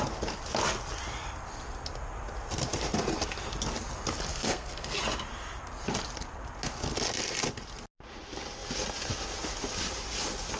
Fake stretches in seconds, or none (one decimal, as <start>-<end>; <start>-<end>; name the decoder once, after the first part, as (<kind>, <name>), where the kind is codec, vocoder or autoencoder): 4.3-5.0 (codec, SNAC)